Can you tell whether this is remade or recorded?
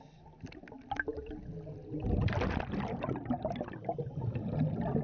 recorded